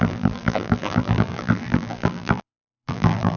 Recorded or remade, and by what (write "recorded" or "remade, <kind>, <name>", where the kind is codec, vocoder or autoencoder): remade, vocoder, BigVGAN v2